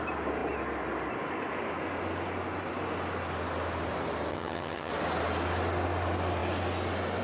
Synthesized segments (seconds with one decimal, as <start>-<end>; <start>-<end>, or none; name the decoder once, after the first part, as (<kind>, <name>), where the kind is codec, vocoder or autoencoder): 4.3-4.9 (vocoder, HiFi-GAN)